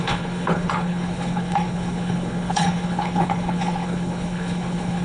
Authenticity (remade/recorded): remade